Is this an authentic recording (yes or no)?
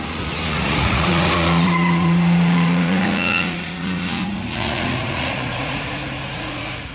no